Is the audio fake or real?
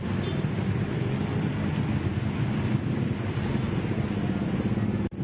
real